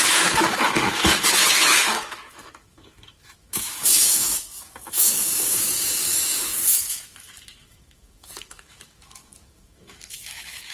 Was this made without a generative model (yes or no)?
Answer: no